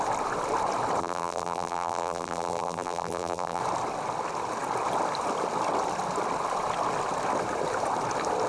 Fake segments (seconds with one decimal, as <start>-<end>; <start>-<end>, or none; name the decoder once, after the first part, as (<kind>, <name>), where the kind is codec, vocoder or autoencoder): 1.0-3.6 (vocoder, BigVGAN v2)